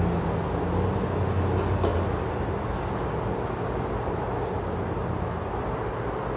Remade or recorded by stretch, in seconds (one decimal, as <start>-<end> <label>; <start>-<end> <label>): 0.0-6.4 recorded